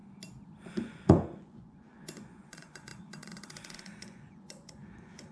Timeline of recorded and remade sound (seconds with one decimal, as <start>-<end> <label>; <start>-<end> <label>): 0.0-0.7 recorded; 0.7-5.3 remade